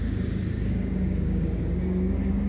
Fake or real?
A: fake